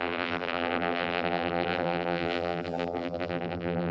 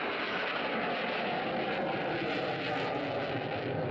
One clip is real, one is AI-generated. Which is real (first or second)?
second